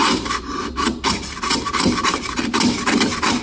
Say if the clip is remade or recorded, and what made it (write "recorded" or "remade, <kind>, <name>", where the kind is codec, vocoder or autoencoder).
recorded